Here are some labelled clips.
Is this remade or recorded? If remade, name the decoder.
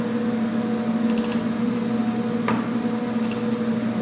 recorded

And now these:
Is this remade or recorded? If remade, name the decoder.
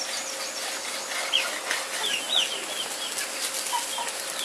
recorded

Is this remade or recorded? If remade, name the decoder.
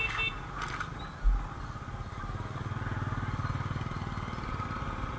recorded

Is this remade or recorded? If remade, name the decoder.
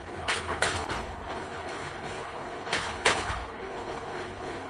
remade, codec, HILCodec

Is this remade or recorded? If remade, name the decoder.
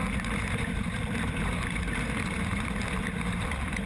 recorded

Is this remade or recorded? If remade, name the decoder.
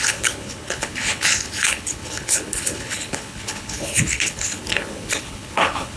remade, codec, HILCodec